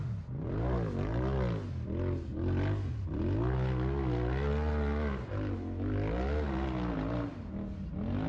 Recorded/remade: recorded